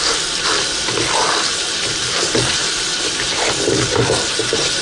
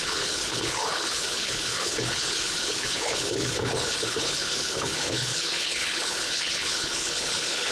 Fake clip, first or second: second